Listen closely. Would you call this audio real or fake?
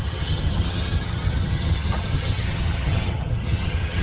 fake